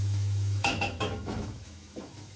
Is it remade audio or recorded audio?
remade